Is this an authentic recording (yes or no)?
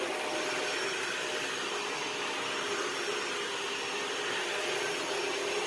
yes